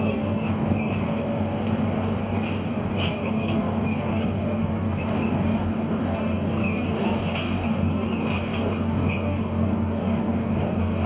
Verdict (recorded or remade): remade